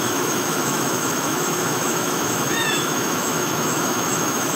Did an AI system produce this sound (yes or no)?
yes